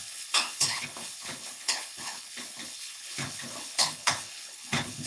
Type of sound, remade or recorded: remade